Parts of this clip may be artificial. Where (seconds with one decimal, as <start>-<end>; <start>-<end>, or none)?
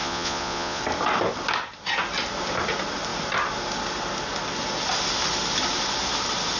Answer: 0.0-0.8